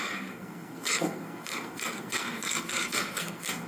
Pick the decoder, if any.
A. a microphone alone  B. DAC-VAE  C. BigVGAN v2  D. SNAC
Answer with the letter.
D